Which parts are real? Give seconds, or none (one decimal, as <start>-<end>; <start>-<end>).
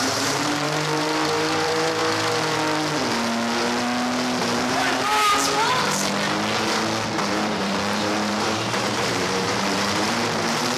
2.0-4.4; 5.1-7.3